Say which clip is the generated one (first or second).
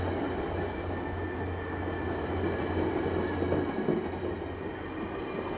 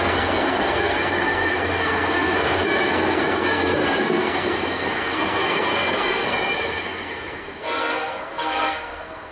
second